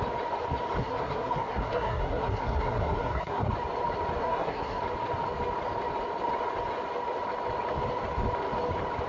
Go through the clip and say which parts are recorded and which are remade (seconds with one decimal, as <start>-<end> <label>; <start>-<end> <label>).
0.0-0.8 recorded; 0.8-3.5 remade; 3.5-4.2 recorded; 4.2-4.8 remade; 4.8-9.1 recorded